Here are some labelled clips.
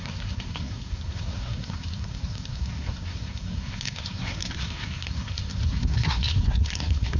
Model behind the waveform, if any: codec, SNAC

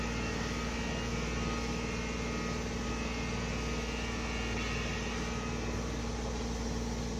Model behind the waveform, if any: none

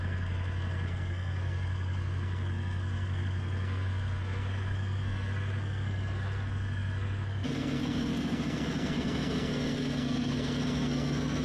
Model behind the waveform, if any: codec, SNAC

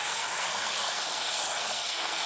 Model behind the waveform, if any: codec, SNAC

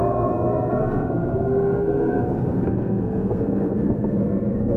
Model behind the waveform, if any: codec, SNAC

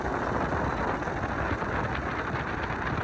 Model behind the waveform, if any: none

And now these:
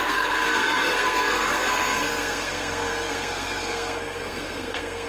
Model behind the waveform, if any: codec, SNAC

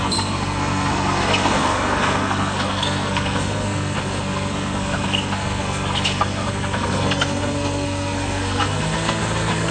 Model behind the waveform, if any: codec, SNAC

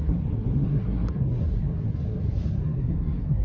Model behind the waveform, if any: codec, SNAC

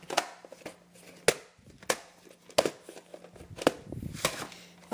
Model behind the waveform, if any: none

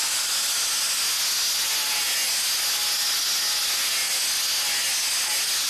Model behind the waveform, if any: none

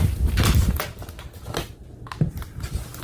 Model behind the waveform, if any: none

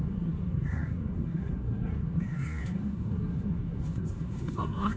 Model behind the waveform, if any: codec, SNAC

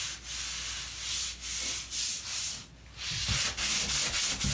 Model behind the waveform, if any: none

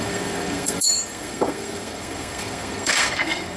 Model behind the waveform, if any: codec, SNAC